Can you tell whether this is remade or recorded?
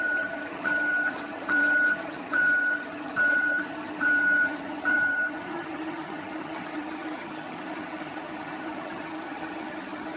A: remade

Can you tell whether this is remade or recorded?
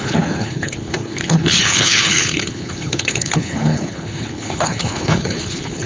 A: remade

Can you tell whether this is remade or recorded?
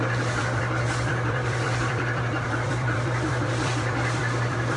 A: remade